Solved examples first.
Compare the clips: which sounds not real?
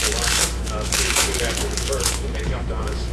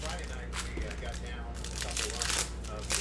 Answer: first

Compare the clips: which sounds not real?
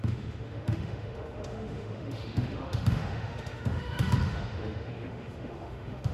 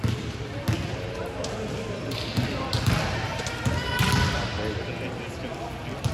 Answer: first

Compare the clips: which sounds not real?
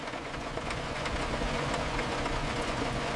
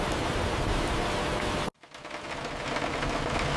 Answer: first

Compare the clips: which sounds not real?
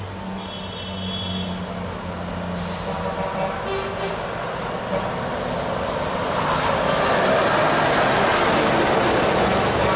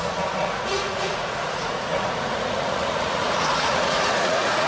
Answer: second